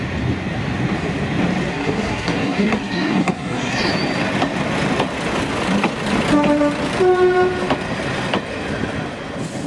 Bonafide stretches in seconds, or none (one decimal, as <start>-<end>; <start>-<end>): 0.0-1.7; 3.9-9.7